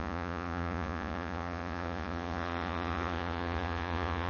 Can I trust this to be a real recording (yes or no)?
no